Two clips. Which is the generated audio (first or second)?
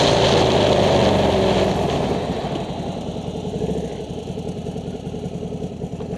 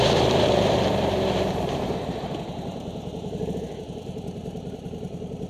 second